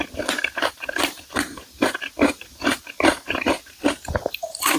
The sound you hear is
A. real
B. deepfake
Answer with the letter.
A